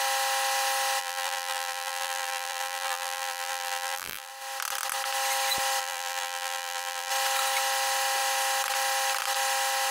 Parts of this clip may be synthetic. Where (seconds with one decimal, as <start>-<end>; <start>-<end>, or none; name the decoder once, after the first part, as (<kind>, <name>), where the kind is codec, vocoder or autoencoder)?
1.0-4.3 (vocoder, BigVGAN v2); 5.8-7.1